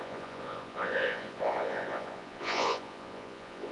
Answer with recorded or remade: remade